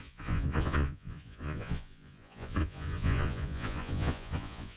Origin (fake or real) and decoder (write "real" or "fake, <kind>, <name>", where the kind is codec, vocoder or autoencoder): fake, vocoder, Vocos